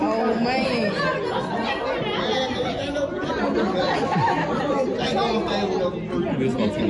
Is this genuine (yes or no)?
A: yes